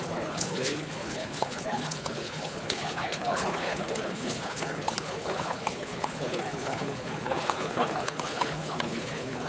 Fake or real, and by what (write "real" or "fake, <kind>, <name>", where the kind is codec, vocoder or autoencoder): fake, codec, HILCodec